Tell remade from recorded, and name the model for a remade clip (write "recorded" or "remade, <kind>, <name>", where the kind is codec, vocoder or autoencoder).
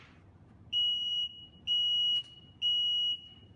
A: recorded